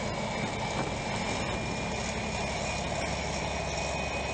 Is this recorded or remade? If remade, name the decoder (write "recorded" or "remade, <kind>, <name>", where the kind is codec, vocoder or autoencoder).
recorded